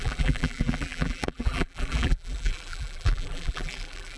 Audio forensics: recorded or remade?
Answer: remade